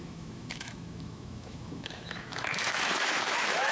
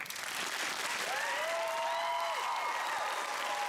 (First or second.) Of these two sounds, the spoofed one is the first